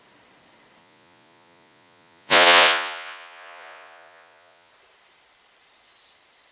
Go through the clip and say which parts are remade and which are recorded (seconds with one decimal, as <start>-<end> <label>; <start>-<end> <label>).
0.0-0.8 recorded; 0.8-4.7 remade; 4.7-6.5 recorded